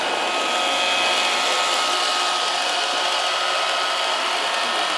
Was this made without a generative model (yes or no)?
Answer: yes